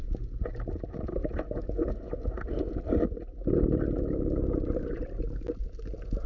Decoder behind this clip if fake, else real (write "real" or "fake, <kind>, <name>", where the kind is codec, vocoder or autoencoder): real